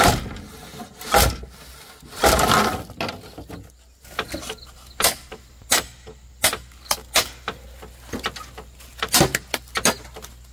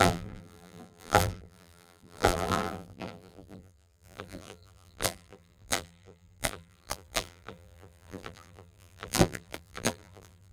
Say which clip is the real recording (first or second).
first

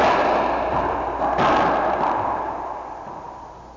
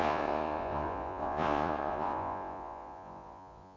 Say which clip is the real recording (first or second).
first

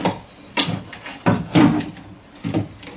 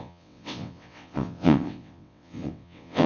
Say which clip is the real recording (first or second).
first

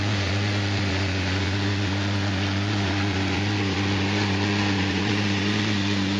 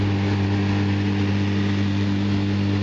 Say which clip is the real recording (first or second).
second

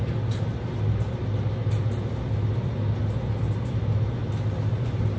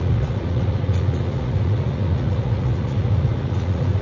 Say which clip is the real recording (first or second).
first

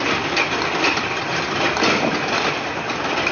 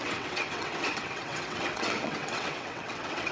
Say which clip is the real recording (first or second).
first